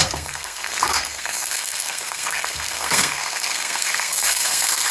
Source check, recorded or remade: remade